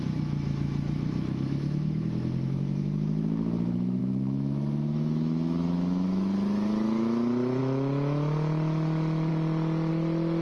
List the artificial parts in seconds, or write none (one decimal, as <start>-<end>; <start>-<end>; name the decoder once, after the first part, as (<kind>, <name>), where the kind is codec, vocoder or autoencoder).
0.0-9.3 (autoencoder, DAC-VAE); 9.9-10.4